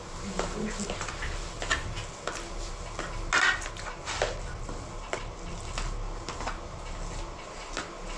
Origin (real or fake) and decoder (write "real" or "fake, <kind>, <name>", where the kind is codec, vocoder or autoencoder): real